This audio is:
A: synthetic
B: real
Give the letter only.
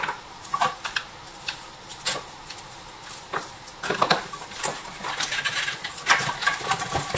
B